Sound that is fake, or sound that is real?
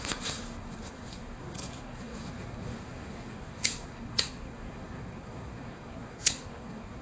fake